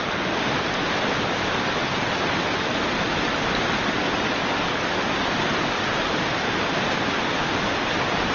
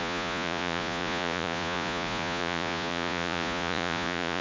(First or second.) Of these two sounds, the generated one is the second